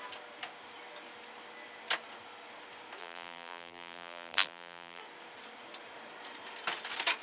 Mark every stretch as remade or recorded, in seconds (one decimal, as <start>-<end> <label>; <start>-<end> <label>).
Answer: 0.0-3.0 recorded; 3.0-5.0 remade; 5.0-7.2 recorded